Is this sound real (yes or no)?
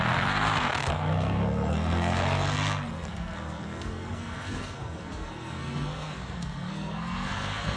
no